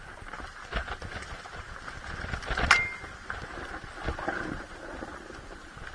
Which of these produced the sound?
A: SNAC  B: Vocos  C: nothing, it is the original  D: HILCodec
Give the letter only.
C